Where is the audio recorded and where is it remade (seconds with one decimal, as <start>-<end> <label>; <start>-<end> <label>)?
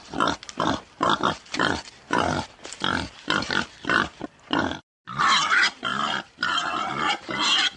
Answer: 0.0-5.9 recorded; 5.9-6.8 remade; 6.8-7.8 recorded